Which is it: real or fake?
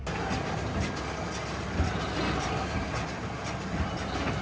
real